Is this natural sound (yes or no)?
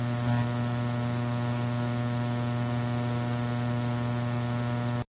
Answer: yes